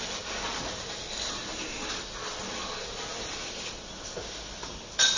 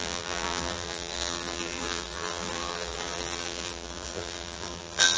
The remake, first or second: second